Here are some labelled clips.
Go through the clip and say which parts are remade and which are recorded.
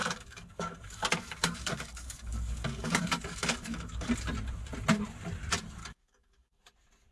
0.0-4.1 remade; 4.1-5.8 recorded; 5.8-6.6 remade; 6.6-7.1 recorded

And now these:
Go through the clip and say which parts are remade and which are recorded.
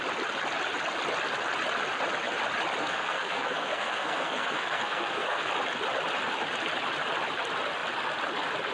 0.0-2.8 recorded; 2.8-5.5 remade; 5.5-8.7 recorded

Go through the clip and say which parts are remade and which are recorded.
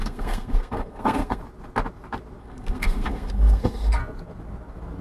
0.0-1.4 remade; 1.4-2.4 recorded; 2.4-4.0 remade; 4.0-5.0 recorded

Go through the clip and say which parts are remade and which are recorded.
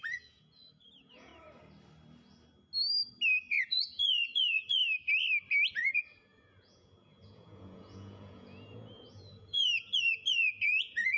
0.0-1.3 remade; 1.3-3.7 recorded; 3.7-4.8 remade; 4.8-5.7 recorded; 5.7-11.2 remade